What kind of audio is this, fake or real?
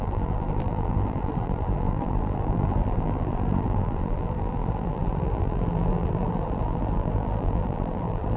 fake